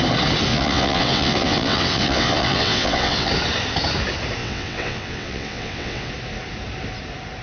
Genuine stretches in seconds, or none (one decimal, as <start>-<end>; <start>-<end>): 0.0-0.5; 3.3-4.4; 6.1-7.4